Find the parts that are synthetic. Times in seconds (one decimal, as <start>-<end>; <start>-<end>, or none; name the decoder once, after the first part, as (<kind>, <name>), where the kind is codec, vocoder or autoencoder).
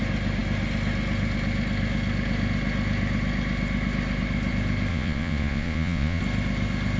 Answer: 4.9-6.2 (vocoder, Vocos)